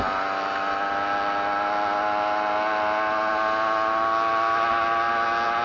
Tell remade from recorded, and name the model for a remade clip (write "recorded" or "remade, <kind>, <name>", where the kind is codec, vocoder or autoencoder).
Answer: recorded